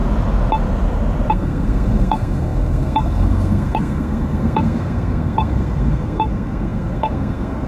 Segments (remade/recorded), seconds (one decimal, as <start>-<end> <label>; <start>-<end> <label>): 0.0-1.3 recorded; 1.3-7.7 remade